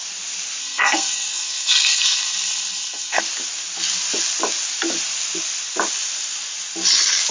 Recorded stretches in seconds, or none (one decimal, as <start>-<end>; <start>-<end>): 0.0-0.6; 3.2-7.3